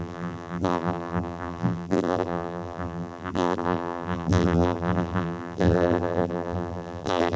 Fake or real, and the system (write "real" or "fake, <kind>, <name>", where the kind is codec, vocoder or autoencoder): fake, vocoder, BigVGAN v2